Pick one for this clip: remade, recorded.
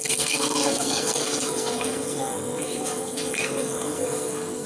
remade